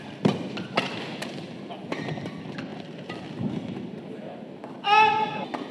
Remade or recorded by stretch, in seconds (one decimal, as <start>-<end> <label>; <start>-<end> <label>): 0.0-5.7 recorded